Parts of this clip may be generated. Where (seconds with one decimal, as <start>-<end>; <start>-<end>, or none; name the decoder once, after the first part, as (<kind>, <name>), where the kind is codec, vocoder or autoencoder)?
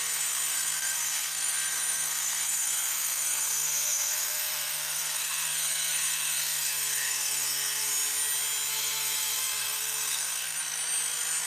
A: 0.0-7.9 (codec, SNAC); 8.7-10.6